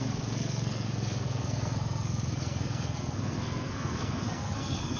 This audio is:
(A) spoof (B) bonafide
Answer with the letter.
A